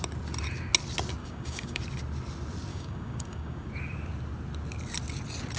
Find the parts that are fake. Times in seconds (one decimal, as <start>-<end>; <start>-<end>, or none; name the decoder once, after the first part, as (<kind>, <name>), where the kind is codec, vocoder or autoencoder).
1.2-1.8 (codec, DAC); 2.7-3.7